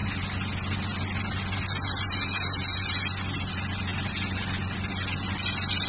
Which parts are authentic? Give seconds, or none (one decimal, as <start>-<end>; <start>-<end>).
0.0-5.9